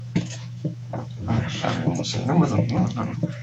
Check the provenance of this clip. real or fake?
fake